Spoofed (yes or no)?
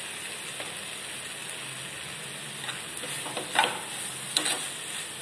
no